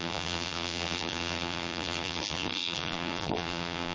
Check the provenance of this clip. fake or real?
fake